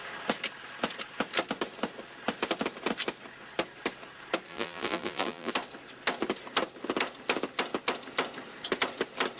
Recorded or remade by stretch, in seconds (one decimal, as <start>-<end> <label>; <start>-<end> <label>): 0.0-4.5 recorded; 4.5-5.5 remade; 5.5-9.4 recorded

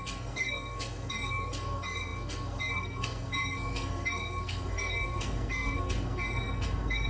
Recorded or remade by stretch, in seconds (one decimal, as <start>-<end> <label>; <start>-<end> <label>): 0.0-7.1 remade

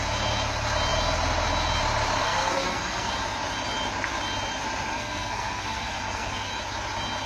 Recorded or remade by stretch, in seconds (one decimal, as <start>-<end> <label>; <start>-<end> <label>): 0.0-2.2 recorded; 2.2-3.1 remade; 3.1-4.9 recorded; 4.9-6.5 remade; 6.5-7.3 recorded